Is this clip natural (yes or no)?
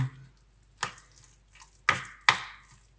yes